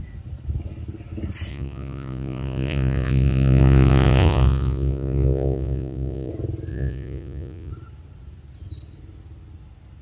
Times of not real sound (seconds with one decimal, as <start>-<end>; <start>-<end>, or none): 1.5-6.3; 6.7-7.7